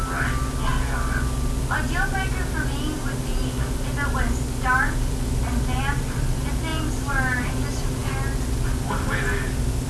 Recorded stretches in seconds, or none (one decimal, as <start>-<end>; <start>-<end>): 0.0-6.7; 7.5-9.9